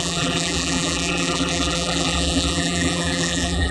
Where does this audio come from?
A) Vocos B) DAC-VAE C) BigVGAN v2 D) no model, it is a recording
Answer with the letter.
C